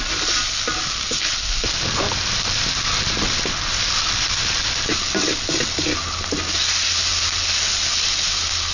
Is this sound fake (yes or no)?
no